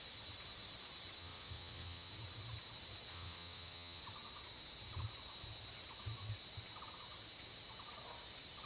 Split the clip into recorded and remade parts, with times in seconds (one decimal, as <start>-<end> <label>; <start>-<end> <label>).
0.0-1.2 recorded; 1.2-2.1 remade; 2.1-3.1 recorded; 3.1-4.0 remade; 4.0-8.7 recorded